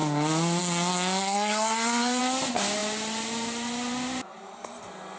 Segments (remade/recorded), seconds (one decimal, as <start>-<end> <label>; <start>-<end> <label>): 0.0-1.2 recorded; 1.2-2.2 remade; 2.2-5.2 recorded